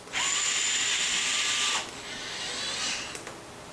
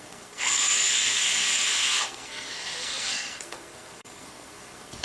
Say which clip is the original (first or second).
first